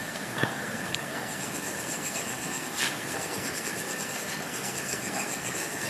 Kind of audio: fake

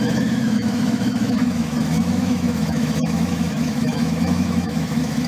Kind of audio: fake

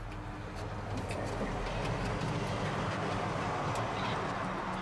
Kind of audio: real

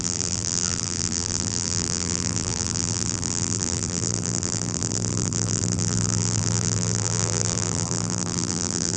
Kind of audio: fake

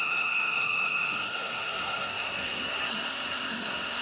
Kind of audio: fake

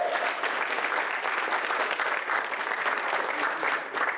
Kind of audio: real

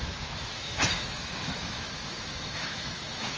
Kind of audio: fake